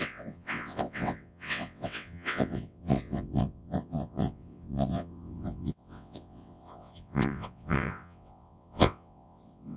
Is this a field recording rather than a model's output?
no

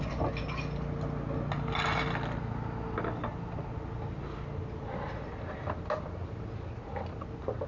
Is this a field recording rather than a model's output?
yes